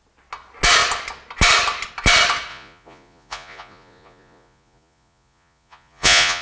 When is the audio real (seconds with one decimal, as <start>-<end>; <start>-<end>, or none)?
0.0-2.5

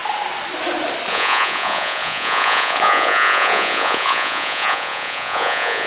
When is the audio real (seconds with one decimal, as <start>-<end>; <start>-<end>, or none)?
0.0-1.1